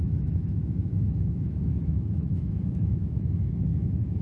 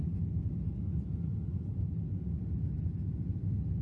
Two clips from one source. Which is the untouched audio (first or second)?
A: second